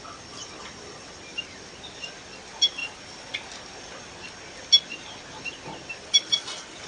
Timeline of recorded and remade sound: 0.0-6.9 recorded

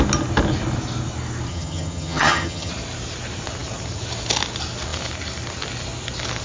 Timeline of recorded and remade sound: 0.0-1.5 recorded; 1.5-2.7 remade; 2.7-6.4 recorded

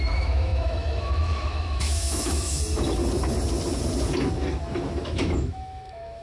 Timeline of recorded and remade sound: 0.0-2.6 remade; 2.6-5.0 recorded; 5.0-6.2 remade

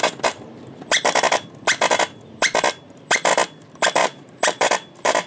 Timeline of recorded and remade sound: 0.0-0.5 remade; 0.5-2.9 recorded; 2.9-3.3 remade; 3.3-4.0 recorded; 4.0-5.3 remade

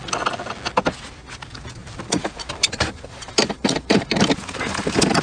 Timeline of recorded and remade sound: 0.0-1.4 recorded; 1.4-5.2 remade